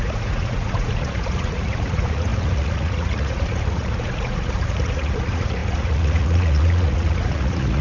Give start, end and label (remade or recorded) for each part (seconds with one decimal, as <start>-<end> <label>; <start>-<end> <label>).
0.0-7.8 remade